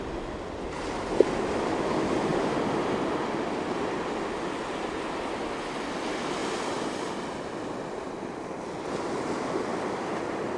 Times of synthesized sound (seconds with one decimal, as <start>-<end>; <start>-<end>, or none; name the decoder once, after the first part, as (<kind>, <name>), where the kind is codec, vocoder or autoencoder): 6.4-7.1 (vocoder, BigVGAN v2); 9.7-10.6